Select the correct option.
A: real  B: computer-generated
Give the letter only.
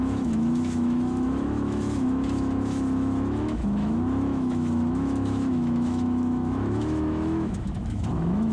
B